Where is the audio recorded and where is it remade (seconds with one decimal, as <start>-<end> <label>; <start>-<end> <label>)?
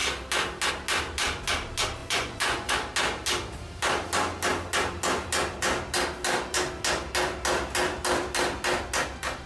0.0-2.0 recorded; 2.0-2.7 remade; 2.7-9.5 recorded